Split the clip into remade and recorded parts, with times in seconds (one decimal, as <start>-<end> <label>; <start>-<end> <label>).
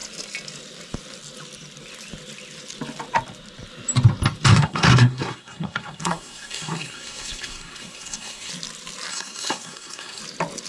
0.0-4.5 recorded; 4.5-8.5 remade; 8.5-9.1 recorded; 9.1-10.2 remade; 10.2-10.7 recorded